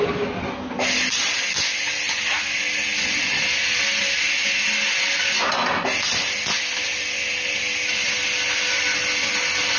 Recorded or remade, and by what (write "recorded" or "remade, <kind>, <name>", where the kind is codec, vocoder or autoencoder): recorded